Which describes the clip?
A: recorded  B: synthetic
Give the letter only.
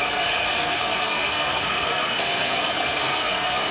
B